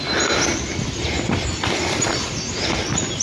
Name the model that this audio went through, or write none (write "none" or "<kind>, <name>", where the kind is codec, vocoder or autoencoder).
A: none